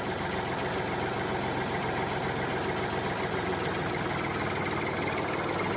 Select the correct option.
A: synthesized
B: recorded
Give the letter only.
B